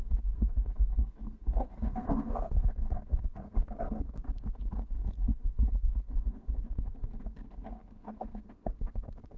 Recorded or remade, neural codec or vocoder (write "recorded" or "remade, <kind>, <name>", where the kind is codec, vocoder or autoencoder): remade, codec, SNAC